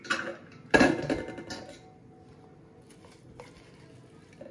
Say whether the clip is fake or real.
real